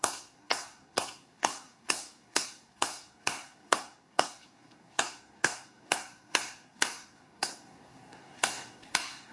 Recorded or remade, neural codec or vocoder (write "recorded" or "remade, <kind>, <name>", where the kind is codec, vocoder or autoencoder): remade, codec, SNAC